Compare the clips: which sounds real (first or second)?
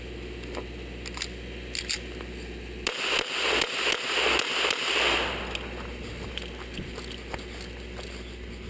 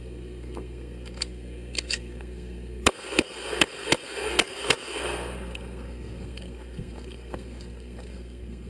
first